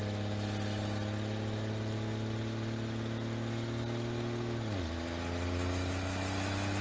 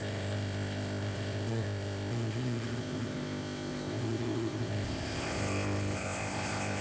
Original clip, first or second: first